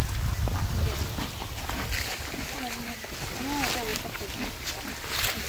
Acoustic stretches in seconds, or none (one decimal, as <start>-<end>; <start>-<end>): 0.0-5.5